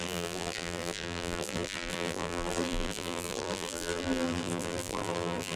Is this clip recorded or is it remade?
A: remade